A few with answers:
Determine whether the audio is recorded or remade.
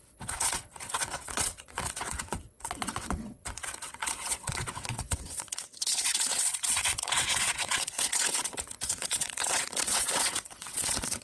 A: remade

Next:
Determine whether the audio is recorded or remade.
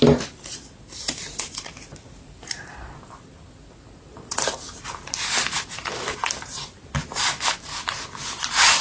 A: recorded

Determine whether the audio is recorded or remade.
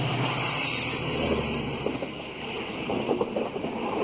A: recorded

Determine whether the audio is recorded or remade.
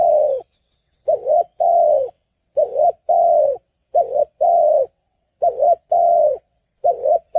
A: remade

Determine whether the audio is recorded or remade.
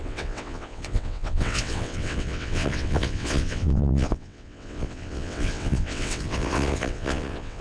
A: remade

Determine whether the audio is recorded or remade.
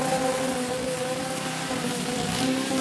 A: recorded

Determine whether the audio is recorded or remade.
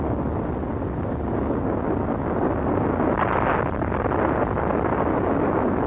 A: recorded